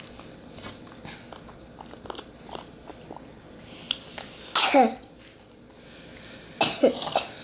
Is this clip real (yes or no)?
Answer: yes